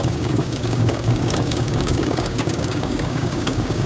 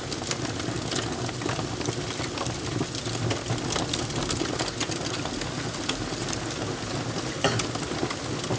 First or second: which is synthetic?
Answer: first